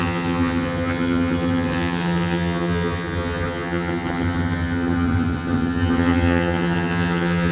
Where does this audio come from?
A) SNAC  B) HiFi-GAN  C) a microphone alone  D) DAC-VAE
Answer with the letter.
B